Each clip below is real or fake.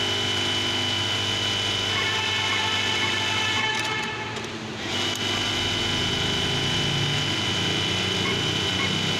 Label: real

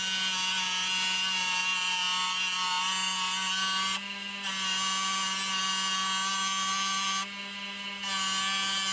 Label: real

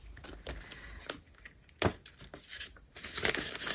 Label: real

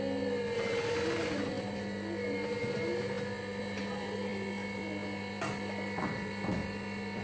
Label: real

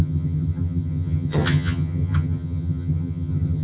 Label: fake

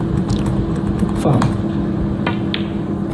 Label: real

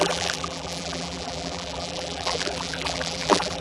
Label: fake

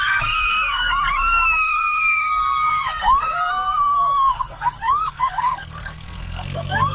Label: fake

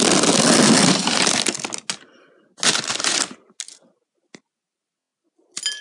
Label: real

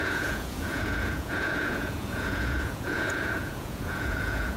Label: fake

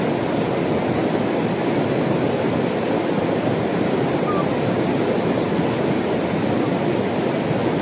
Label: real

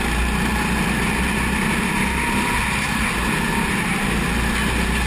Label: real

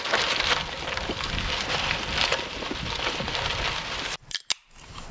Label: real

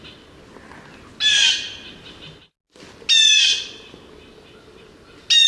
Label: real